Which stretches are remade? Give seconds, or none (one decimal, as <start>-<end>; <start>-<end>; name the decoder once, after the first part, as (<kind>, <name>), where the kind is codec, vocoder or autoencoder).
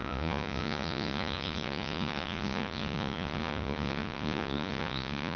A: 0.0-5.4 (vocoder, Vocos)